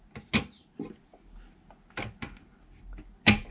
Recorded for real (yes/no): yes